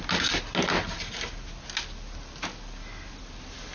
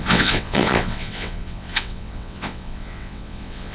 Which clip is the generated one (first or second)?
second